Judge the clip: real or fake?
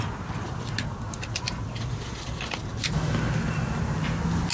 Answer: real